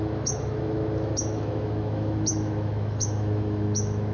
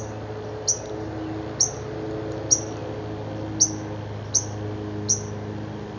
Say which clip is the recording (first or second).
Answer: second